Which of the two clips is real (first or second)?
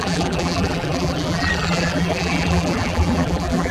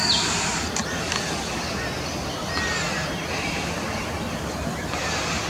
second